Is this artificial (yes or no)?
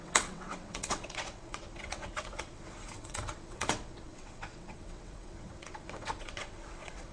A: yes